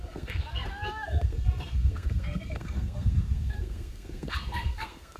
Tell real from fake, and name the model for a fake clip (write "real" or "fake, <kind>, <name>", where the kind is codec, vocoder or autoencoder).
fake, codec, SNAC